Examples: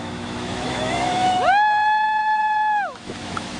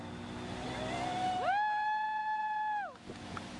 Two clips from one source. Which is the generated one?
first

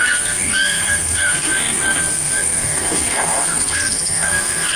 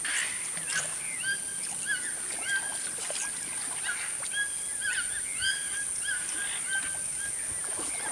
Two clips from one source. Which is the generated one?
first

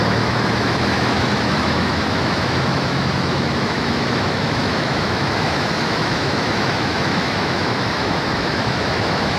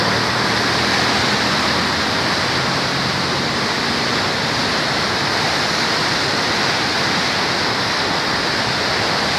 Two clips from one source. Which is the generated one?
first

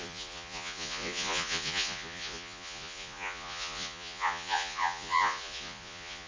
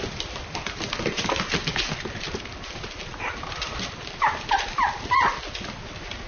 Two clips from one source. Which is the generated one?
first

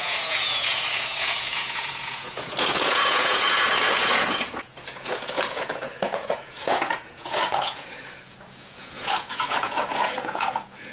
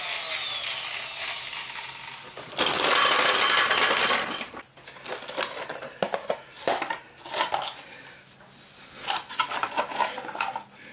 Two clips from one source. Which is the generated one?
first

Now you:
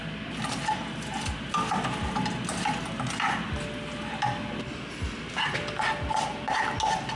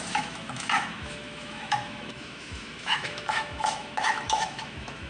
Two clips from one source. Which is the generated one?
second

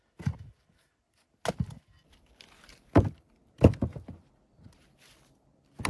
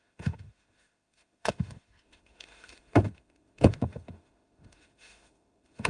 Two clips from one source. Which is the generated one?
second